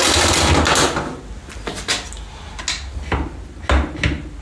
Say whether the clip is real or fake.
real